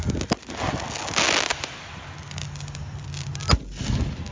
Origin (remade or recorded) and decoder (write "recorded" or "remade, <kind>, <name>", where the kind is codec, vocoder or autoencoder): recorded